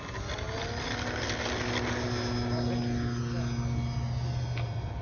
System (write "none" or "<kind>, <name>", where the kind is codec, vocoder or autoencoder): none